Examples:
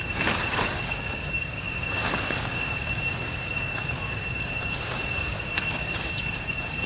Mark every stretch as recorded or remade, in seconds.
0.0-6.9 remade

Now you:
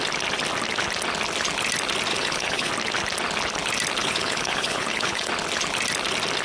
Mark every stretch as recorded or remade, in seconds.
0.0-2.1 recorded; 2.1-2.7 remade; 2.7-4.0 recorded; 4.0-5.3 remade; 5.3-6.4 recorded